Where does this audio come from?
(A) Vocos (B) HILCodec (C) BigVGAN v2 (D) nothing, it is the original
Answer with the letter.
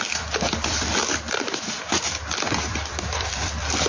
C